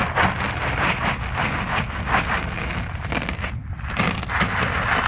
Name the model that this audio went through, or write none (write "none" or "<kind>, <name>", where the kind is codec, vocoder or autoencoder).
vocoder, BigVGAN v2